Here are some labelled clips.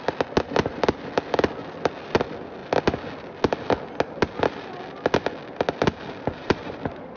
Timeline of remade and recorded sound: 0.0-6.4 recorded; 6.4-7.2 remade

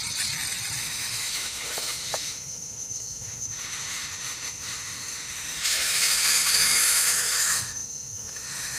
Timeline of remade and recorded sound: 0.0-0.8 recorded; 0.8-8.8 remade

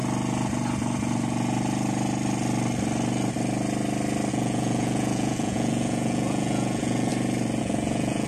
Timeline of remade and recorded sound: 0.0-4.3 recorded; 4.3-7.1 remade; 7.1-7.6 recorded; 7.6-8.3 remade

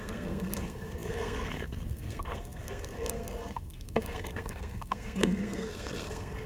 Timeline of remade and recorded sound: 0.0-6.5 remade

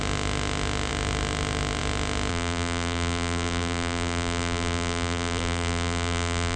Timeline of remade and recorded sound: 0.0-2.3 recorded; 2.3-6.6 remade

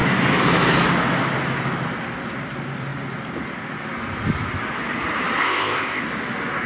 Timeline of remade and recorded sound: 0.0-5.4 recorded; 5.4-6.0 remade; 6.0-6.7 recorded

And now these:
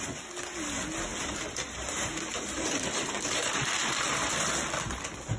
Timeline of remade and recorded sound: 0.0-1.1 recorded; 1.1-4.3 remade; 4.3-5.4 recorded

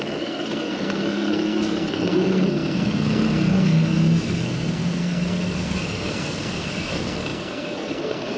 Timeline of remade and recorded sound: 0.0-8.4 remade